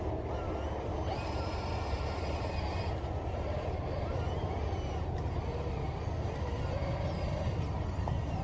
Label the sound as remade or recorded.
recorded